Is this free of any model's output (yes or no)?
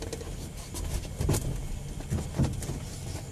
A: yes